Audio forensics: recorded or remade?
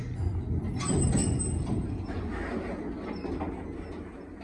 recorded